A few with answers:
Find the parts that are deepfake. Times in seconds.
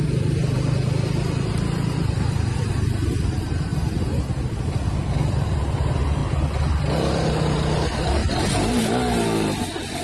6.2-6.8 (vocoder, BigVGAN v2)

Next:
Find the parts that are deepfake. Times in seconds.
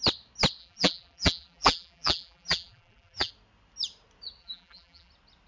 0.6-3.3 (vocoder, BigVGAN v2); 4.4-5.1